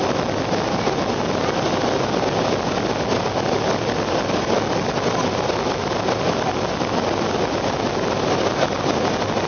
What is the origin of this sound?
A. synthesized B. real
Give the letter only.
B